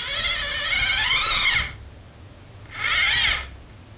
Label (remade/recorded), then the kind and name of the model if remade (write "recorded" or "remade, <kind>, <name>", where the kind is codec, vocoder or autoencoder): recorded